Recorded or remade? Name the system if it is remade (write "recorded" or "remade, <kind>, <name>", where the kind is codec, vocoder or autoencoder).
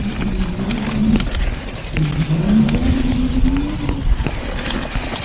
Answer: recorded